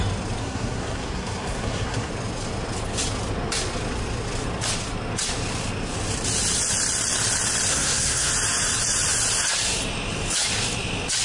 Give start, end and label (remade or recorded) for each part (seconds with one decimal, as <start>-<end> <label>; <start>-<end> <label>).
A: 0.0-0.4 recorded; 0.4-2.1 remade; 2.1-7.7 recorded; 7.7-8.3 remade; 8.3-11.2 recorded